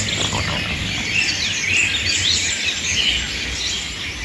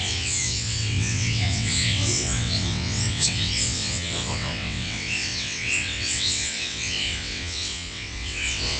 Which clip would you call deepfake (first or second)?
second